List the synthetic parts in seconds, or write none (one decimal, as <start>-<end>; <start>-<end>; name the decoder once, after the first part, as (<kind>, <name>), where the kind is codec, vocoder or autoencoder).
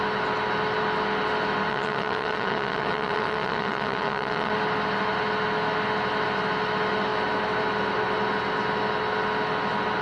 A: 1.7-4.5 (vocoder, WaveNeXt)